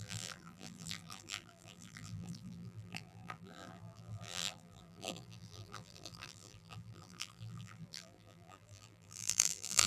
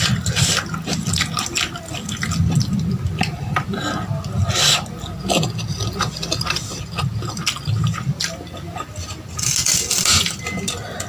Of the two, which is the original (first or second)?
second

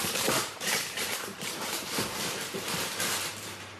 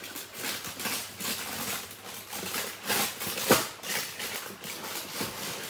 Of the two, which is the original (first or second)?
second